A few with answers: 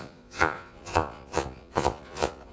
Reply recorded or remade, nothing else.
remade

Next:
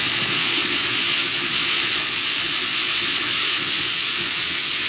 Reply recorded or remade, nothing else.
remade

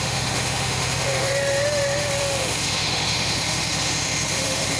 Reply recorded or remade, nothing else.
remade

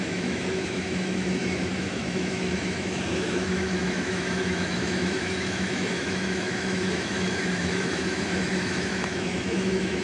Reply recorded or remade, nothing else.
remade